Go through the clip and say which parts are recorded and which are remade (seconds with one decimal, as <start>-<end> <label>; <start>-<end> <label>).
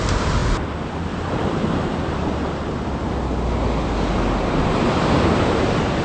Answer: 0.0-6.0 recorded